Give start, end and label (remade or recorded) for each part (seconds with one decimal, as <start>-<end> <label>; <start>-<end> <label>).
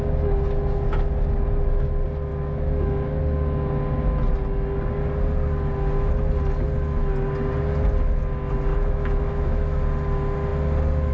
0.0-2.3 recorded; 2.3-3.2 remade; 3.2-8.7 recorded; 8.7-9.8 remade; 9.8-11.1 recorded